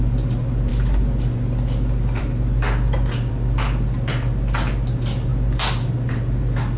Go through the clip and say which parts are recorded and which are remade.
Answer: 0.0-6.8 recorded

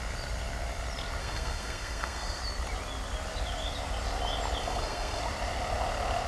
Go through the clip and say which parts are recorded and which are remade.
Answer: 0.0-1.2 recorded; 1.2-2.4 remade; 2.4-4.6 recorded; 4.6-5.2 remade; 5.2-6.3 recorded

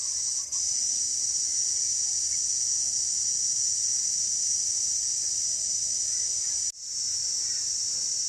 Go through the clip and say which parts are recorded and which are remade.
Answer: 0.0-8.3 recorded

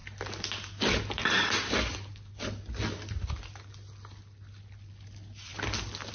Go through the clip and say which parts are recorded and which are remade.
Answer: 0.0-6.1 recorded

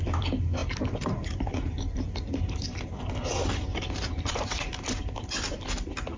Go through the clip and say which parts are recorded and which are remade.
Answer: 0.0-6.2 recorded